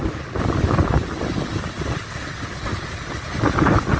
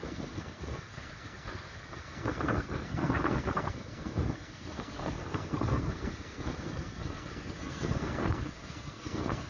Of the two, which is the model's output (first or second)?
second